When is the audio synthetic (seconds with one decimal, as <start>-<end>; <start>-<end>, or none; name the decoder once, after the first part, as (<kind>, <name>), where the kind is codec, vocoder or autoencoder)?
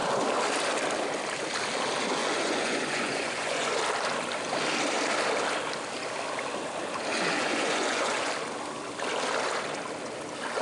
2.2-3.8 (vocoder, Vocos); 7.1-8.3